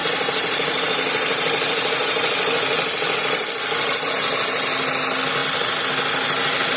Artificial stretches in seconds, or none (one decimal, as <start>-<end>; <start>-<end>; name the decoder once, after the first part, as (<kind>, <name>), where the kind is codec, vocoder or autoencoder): 0.0-4.1 (vocoder, BigVGAN v2); 5.4-5.9